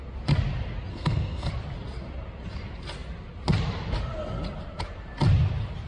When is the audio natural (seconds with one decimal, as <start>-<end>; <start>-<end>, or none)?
0.0-0.9; 1.5-5.9

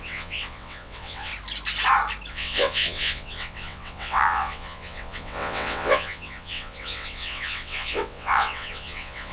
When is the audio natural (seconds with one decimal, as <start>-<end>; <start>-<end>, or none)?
1.3-2.3